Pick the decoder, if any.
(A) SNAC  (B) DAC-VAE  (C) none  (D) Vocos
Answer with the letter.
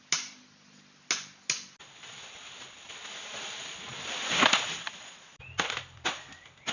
C